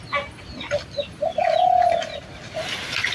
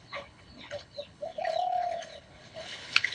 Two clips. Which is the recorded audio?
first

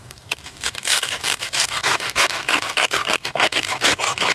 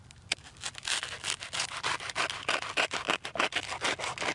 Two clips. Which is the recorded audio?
second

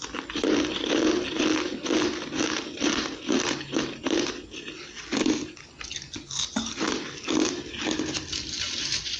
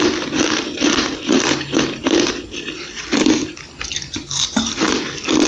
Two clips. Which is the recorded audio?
first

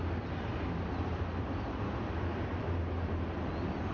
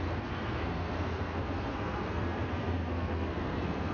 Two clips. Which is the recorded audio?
first